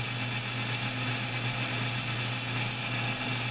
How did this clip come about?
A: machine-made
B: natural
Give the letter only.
B